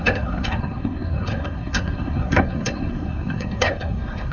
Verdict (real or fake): fake